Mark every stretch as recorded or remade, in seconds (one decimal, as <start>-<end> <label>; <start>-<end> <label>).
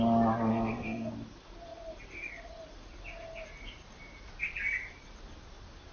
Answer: 0.0-0.5 recorded; 0.5-1.1 remade; 1.1-5.9 recorded